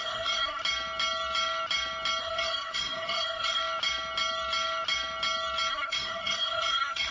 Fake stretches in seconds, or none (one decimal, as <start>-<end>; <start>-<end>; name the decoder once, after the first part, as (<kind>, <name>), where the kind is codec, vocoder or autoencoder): 0.0-0.6 (codec, SNAC); 2.2-3.6; 5.7-7.1